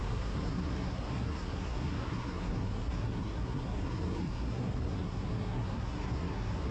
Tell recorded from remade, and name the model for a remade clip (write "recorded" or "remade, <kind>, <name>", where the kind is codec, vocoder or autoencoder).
remade, codec, SNAC